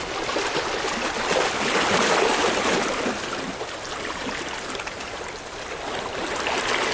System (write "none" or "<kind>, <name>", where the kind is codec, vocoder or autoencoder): none